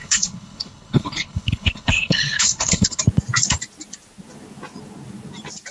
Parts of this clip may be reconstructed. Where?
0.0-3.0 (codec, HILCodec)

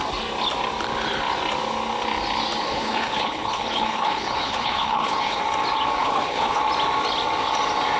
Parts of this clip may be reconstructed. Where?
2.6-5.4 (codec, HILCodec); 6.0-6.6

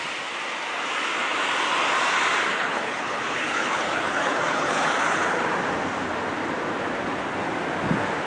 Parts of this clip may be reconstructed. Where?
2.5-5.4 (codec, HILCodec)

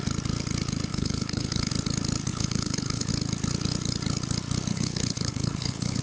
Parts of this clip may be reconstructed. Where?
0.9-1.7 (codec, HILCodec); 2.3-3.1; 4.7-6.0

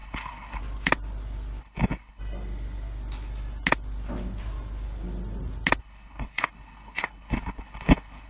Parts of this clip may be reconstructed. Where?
0.0-0.6 (codec, HILCodec); 1.6-2.2; 5.8-8.3

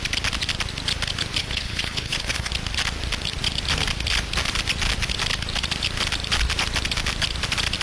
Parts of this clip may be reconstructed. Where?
1.4-2.5 (codec, HILCodec)

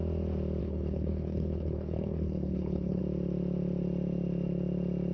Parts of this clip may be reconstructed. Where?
0.6-3.0 (codec, HILCodec)

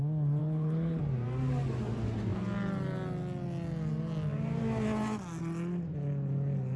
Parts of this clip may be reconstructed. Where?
0.4-1.0 (codec, HILCodec)